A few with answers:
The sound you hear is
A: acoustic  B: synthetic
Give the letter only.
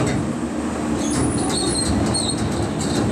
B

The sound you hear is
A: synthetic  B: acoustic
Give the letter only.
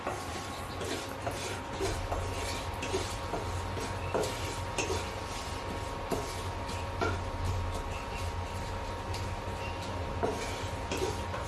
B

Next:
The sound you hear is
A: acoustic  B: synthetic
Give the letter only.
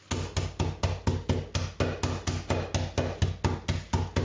A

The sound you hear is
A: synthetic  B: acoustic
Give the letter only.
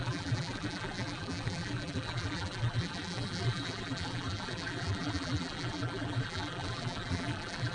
A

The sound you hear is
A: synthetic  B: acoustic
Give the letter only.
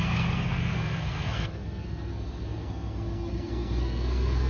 A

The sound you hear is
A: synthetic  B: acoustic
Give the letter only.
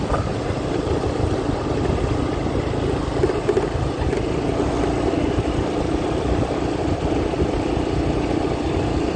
B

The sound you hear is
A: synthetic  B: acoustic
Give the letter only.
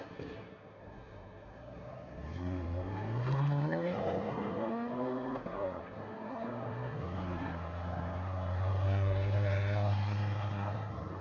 A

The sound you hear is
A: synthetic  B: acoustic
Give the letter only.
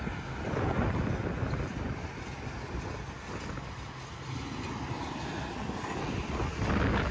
B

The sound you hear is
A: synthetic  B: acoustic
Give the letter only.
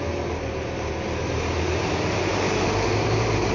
B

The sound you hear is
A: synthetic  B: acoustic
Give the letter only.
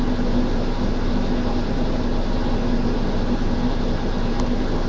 B